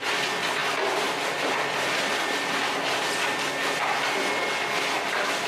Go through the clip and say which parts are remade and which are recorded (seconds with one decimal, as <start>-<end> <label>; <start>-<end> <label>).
0.0-0.6 recorded; 0.6-3.0 remade; 3.0-3.6 recorded; 3.6-4.3 remade; 4.3-5.5 recorded